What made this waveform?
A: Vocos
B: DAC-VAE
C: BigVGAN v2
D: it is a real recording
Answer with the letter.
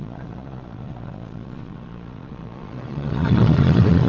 A